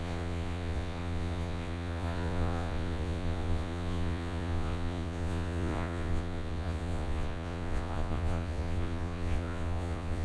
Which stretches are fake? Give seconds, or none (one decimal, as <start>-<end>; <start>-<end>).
0.0-10.2